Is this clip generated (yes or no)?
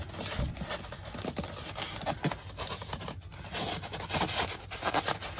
no